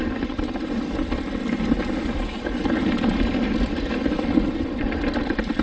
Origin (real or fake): real